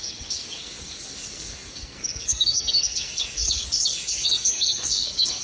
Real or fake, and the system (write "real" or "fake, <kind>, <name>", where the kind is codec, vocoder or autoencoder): fake, codec, SNAC